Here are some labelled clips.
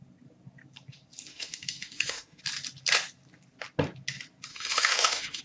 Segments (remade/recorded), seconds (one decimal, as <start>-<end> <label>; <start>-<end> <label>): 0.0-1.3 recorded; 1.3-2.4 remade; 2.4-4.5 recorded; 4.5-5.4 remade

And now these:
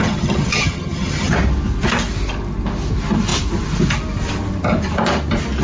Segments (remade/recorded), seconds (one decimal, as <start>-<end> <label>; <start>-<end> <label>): 0.0-1.3 remade; 1.3-5.6 recorded

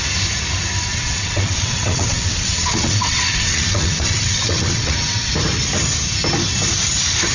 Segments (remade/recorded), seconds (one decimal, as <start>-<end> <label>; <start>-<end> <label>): 0.0-0.9 recorded; 0.9-5.3 remade; 5.3-7.3 recorded

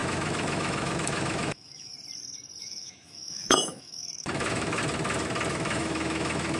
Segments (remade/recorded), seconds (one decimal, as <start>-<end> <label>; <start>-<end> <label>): 0.0-1.9 remade; 1.9-2.6 recorded; 2.6-4.8 remade; 4.8-5.5 recorded; 5.5-6.6 remade

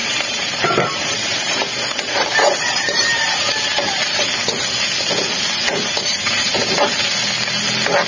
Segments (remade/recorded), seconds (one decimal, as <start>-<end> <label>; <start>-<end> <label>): 0.0-4.3 remade; 4.3-5.6 recorded; 5.6-6.6 remade; 6.6-8.1 recorded

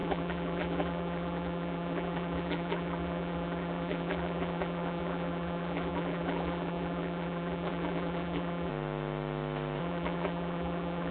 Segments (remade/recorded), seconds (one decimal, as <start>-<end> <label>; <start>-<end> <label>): 0.0-8.7 remade; 8.7-9.8 recorded; 9.8-11.1 remade

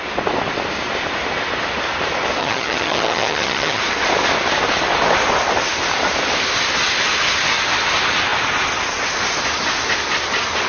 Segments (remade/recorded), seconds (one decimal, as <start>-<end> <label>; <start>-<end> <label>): 0.0-2.4 recorded; 2.4-3.8 remade; 3.8-10.7 recorded

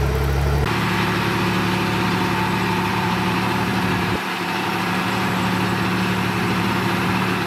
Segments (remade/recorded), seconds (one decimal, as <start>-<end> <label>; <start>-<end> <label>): 0.0-2.9 recorded; 2.9-5.3 remade; 5.3-6.4 recorded; 6.4-7.1 remade; 7.1-7.5 recorded